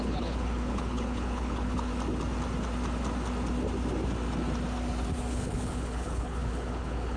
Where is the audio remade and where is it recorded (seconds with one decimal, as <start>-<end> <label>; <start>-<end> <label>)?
0.0-1.9 remade; 1.9-5.3 recorded; 5.3-7.2 remade